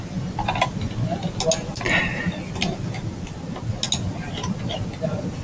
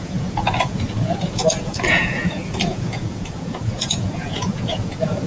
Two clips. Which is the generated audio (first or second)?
second